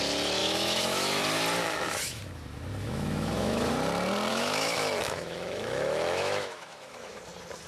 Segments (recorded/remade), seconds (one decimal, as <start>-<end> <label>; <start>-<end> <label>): 0.0-0.4 recorded; 0.4-1.2 remade; 1.2-1.6 recorded; 1.6-2.2 remade; 2.2-2.8 recorded; 2.8-3.7 remade; 3.7-4.3 recorded; 4.3-7.2 remade; 7.2-7.7 recorded